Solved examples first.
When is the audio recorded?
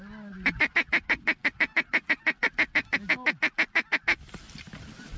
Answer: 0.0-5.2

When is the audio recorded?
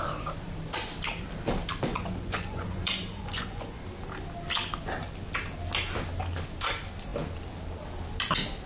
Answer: 0.0-1.9; 3.8-8.7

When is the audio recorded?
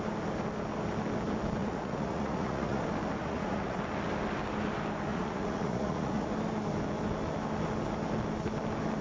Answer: 0.0-1.6; 2.8-3.2; 3.8-5.1; 6.3-9.0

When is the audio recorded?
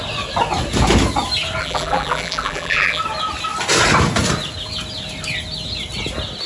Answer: 0.0-1.6; 3.0-6.5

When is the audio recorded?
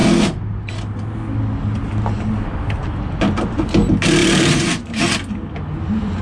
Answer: 0.0-4.2; 5.0-6.2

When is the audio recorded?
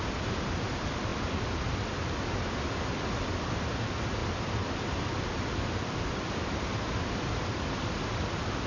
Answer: 0.0-1.1; 2.9-4.2; 6.6-8.7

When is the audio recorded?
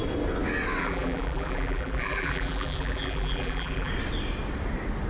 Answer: 0.0-0.8; 3.9-5.1